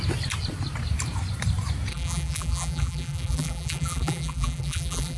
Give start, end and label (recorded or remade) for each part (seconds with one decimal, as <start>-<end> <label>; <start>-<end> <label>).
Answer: 0.0-1.9 recorded; 1.9-5.2 remade